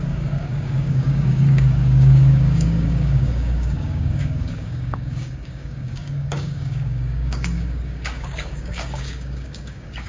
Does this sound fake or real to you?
fake